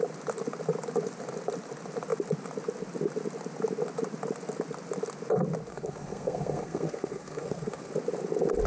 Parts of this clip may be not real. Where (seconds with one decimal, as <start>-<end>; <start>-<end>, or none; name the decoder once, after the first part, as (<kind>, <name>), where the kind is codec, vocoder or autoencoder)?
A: 5.7-7.9 (codec, SNAC)